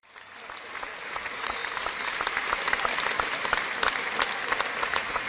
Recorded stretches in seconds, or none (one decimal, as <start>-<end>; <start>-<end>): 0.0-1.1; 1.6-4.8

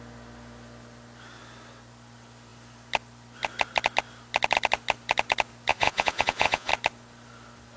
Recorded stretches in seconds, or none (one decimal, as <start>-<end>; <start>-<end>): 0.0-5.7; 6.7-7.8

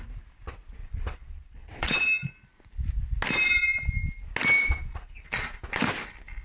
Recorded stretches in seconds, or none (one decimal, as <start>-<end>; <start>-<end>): 0.0-0.8; 2.0-4.6; 5.6-6.4

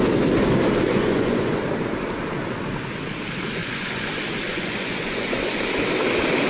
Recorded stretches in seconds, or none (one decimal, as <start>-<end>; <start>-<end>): 0.0-0.9; 1.6-3.6; 4.1-4.5; 5.6-6.5

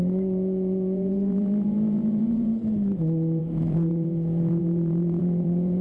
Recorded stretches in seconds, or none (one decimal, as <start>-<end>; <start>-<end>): 2.5-3.4

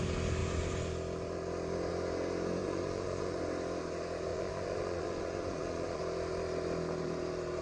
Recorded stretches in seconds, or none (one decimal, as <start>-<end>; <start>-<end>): 0.0-2.6; 3.4-4.3; 6.0-7.6

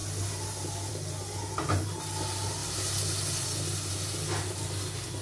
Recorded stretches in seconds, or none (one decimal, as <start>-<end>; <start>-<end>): 0.0-5.2